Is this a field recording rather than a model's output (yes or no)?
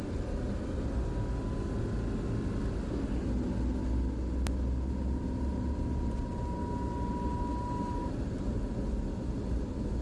yes